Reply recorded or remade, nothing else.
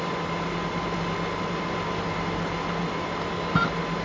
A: recorded